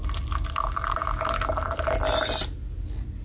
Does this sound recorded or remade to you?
recorded